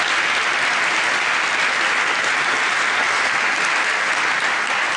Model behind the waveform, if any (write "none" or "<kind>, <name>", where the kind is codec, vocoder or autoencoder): none